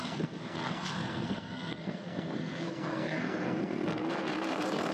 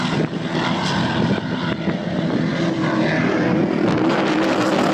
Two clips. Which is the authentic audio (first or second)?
second